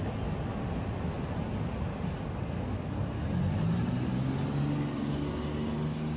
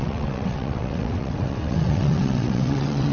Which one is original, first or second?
first